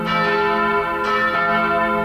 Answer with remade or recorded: recorded